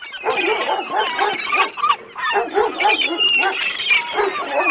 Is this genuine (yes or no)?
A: yes